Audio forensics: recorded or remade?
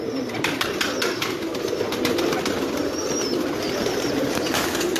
recorded